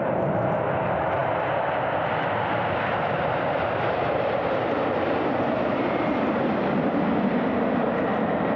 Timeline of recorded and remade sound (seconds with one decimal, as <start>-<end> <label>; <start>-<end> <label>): 0.0-8.6 recorded